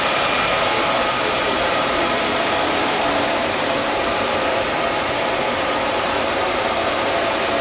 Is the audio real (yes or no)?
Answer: yes